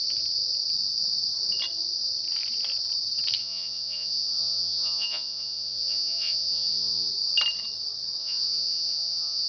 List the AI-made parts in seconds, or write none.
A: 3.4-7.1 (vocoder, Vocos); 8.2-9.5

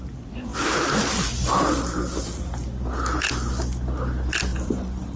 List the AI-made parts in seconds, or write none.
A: 4.5-5.2 (vocoder, BigVGAN v2)

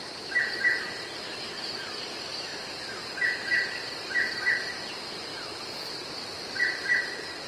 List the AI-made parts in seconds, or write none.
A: 5.3-5.9 (autoencoder, DAC-VAE)